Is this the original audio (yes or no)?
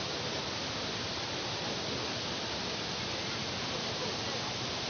yes